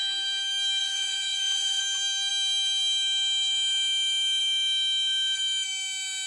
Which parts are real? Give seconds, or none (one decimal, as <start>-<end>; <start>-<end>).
0.0-0.8; 1.8-6.3